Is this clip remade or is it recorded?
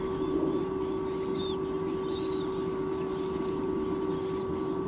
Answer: recorded